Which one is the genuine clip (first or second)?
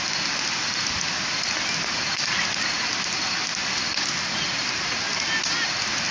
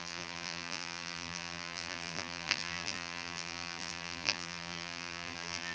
first